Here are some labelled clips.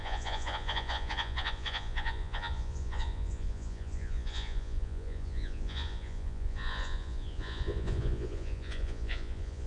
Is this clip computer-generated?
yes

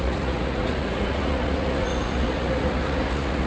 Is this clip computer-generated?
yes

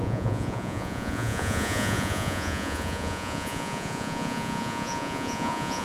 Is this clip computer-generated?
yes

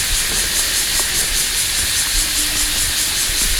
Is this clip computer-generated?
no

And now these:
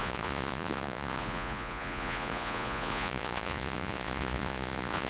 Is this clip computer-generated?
yes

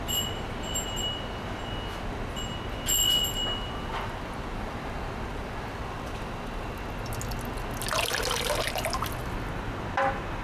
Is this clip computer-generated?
no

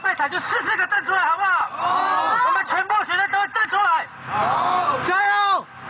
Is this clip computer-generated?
no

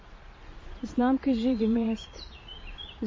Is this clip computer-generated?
yes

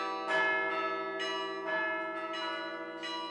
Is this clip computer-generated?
no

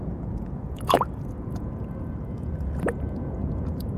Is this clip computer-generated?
yes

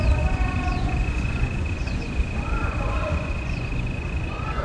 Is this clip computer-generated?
yes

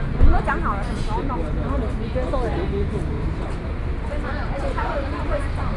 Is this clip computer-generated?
no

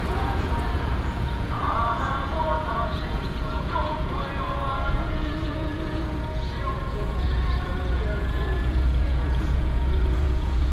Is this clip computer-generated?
yes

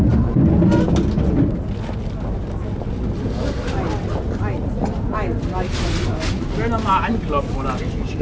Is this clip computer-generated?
no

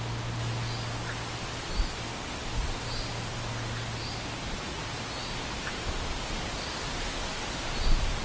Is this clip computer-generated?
no